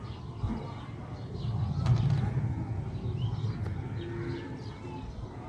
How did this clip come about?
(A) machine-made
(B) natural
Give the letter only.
B